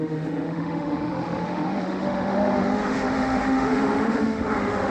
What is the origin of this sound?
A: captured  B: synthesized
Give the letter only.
B